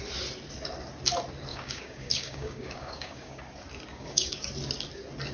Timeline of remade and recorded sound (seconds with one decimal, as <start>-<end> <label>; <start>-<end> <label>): 0.0-1.5 recorded; 1.5-3.4 remade; 3.4-3.9 recorded; 3.9-4.5 remade; 4.5-5.3 recorded